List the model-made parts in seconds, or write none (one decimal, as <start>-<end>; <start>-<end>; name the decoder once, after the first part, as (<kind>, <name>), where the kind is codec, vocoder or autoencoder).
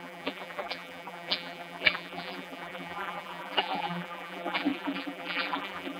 0.0-6.0 (vocoder, BigVGAN v2)